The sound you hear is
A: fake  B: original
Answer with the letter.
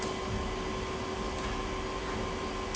B